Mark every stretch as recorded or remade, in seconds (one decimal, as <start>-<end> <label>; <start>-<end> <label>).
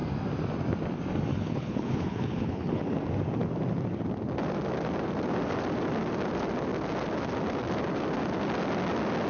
0.0-1.3 recorded; 1.3-2.8 remade; 2.8-9.3 recorded